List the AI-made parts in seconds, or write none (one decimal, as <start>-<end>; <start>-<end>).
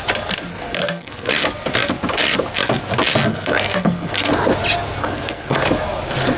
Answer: 0.5-1.3; 3.3-4.3; 5.0-5.6